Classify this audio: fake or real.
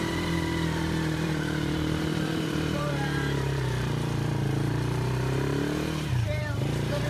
fake